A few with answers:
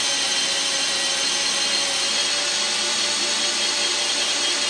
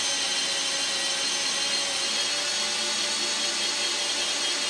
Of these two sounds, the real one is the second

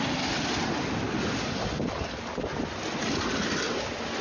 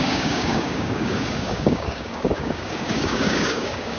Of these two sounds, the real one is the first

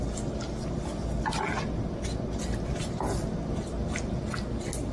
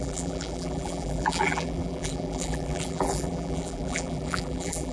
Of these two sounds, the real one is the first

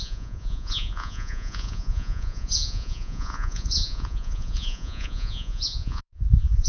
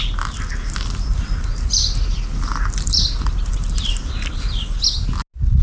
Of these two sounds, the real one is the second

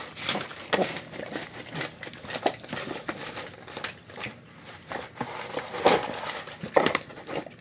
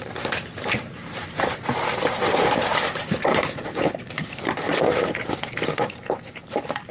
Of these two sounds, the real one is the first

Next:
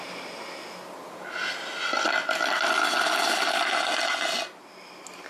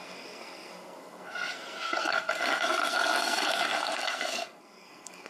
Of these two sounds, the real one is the first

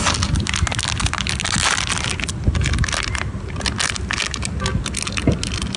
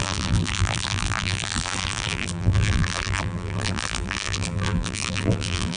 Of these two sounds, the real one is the first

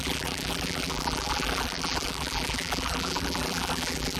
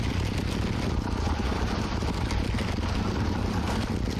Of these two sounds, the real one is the second